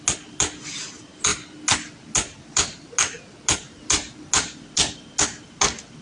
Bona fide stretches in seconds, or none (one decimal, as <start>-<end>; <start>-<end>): 0.0-6.0